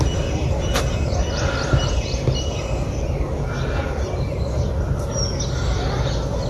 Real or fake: real